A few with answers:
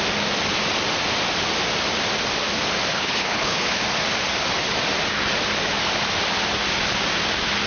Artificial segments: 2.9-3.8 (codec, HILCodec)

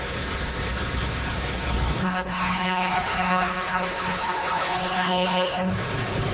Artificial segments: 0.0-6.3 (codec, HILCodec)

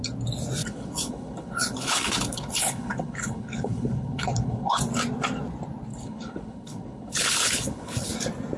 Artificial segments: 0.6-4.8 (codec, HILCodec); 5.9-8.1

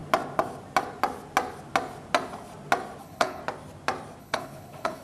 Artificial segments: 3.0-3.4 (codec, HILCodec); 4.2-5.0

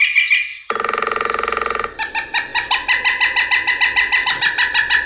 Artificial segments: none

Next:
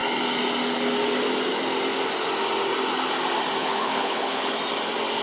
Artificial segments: 3.6-4.5 (codec, HILCodec)

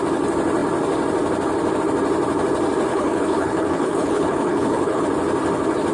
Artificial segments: 2.9-5.0 (codec, HILCodec)